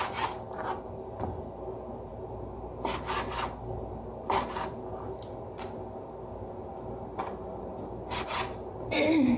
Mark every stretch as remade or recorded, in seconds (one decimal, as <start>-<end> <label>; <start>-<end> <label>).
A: 0.0-9.4 recorded